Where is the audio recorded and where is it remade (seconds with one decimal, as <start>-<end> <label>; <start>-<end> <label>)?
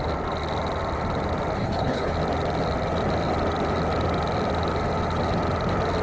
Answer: 0.0-1.6 recorded; 1.6-2.1 remade; 2.1-6.0 recorded